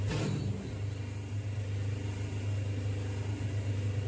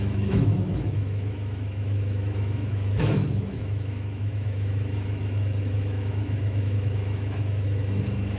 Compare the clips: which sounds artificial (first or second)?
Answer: second